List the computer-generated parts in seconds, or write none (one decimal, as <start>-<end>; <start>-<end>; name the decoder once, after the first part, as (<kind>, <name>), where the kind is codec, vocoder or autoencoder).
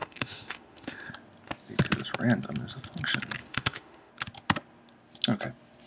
0.0-1.1 (autoencoder, DAC-VAE); 3.4-4.1